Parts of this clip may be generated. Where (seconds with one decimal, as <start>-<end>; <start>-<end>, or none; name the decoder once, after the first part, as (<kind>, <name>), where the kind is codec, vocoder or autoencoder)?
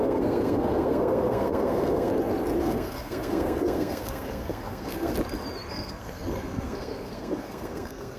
0.0-2.1 (codec, SNAC); 2.6-5.1; 5.7-8.2